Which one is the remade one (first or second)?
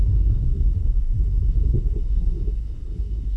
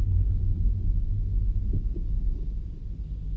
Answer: first